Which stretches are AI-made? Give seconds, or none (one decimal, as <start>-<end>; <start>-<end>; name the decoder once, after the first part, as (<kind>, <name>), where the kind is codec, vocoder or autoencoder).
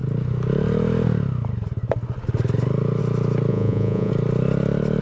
3.5-4.1 (vocoder, Vocos)